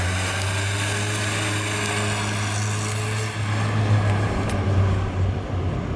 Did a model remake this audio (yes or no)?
no